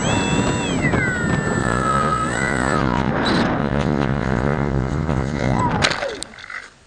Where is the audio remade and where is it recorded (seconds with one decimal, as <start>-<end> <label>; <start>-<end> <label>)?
0.0-1.6 recorded; 1.6-3.1 remade; 3.1-3.6 recorded; 3.6-5.6 remade; 5.6-6.9 recorded